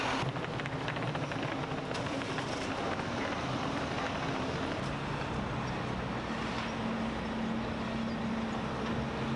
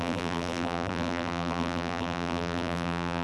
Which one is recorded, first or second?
first